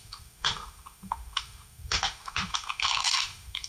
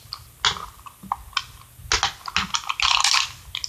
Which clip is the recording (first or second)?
second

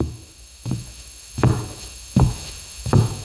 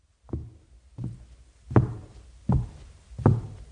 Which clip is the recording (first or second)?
second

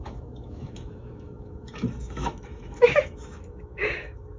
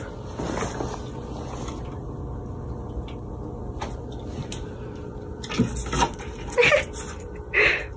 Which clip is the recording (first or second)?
second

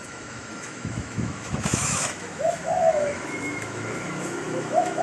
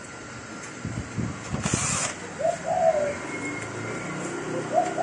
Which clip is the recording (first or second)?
second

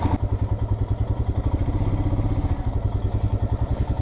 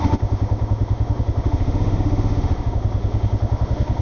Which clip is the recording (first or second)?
first